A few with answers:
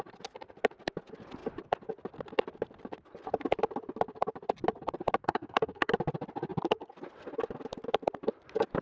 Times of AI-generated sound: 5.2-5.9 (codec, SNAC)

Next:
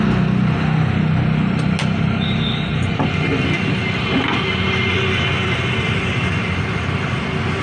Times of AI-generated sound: none

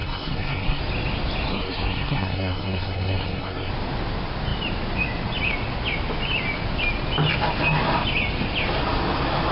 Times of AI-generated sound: 0.0-0.8 (codec, SNAC); 1.5-3.7

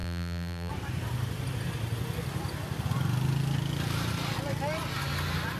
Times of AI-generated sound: 0.0-0.7 (vocoder, BigVGAN v2)

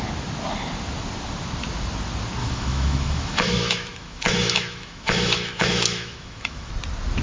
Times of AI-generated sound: 2.4-6.7 (autoencoder, DAC-VAE)